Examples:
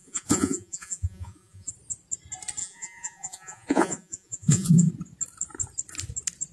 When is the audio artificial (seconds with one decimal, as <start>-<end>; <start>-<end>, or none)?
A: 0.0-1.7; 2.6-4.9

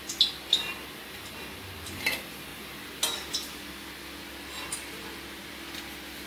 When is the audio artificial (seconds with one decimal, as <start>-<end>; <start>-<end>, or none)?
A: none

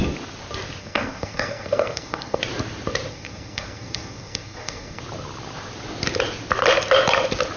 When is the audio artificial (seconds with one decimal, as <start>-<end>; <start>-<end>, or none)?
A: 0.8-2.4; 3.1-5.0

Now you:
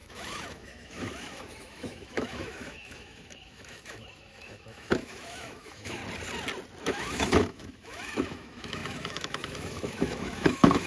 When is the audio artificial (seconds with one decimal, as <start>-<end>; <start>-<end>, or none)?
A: 0.0-6.0; 6.8-10.9

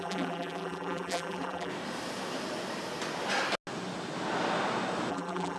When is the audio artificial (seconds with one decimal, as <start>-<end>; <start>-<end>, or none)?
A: 0.0-1.7; 5.1-5.6

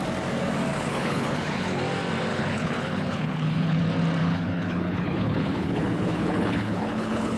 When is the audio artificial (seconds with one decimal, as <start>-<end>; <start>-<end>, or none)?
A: 0.7-1.8; 2.3-3.8; 4.2-7.4

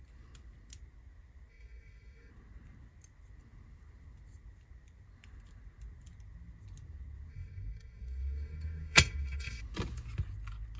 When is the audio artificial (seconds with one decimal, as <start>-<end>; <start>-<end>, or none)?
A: 1.5-2.3; 7.3-9.6